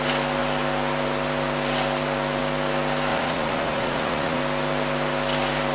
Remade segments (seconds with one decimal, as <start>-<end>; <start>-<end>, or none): 3.1-4.4